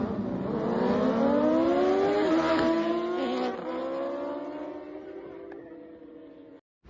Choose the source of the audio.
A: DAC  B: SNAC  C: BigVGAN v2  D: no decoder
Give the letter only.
D